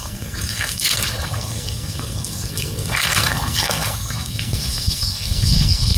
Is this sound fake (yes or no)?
yes